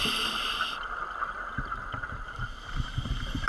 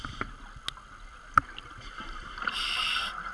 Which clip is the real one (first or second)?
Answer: second